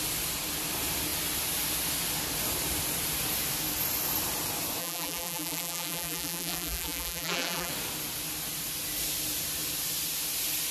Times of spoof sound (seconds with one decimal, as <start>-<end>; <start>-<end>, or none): 4.8-7.7